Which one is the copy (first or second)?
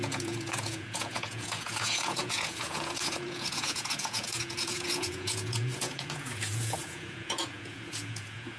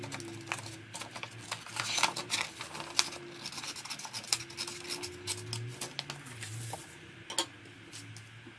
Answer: first